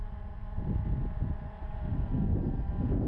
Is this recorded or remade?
recorded